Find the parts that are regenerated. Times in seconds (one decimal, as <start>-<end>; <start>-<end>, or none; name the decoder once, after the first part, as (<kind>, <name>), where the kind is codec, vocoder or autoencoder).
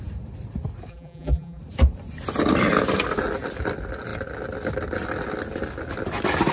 0.9-1.6 (vocoder, BigVGAN v2)